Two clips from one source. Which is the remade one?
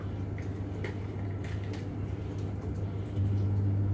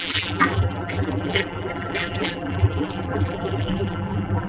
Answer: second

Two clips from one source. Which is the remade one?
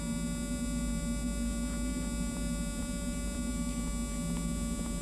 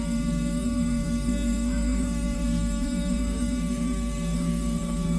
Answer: second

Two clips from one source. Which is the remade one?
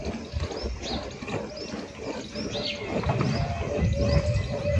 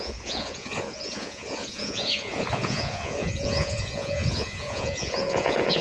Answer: second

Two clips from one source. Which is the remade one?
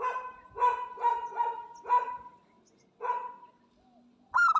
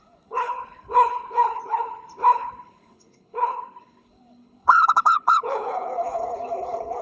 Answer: second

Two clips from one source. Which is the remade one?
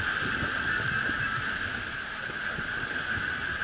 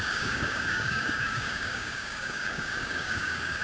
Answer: second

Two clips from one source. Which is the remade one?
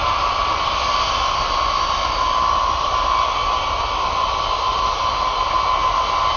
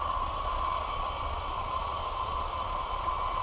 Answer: second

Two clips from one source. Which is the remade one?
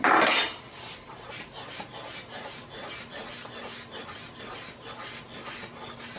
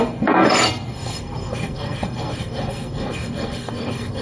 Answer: second